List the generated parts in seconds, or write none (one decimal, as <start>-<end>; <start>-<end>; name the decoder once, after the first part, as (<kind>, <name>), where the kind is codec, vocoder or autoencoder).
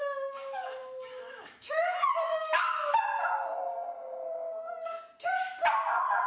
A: 0.0-2.9 (autoencoder, DAC-VAE)